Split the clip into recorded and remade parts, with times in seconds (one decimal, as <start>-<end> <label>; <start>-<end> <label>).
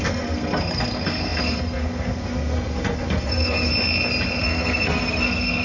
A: 0.0-3.7 remade; 3.7-4.4 recorded; 4.4-5.6 remade